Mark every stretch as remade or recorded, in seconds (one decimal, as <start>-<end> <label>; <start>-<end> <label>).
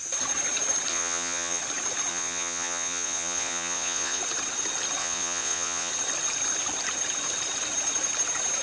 0.0-0.9 recorded; 0.9-1.6 remade; 1.6-2.1 recorded; 2.1-4.2 remade; 4.2-5.0 recorded; 5.0-5.9 remade; 5.9-8.6 recorded